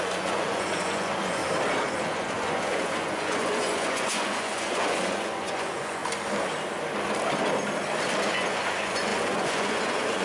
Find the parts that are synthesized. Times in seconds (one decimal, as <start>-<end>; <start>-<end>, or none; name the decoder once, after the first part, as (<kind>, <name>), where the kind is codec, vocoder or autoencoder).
0.0-1.4 (vocoder, Vocos); 1.9-6.0; 8.3-10.2